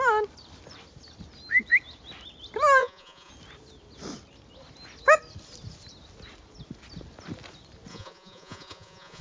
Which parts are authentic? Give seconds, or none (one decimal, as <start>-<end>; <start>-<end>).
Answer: 0.0-2.8; 3.3-7.9